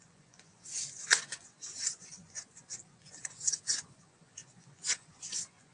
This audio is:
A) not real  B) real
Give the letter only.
A